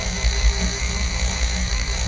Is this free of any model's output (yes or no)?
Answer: no